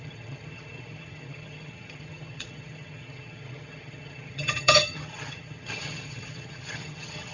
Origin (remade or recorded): remade